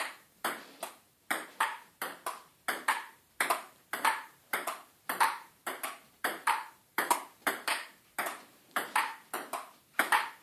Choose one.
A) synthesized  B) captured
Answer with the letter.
A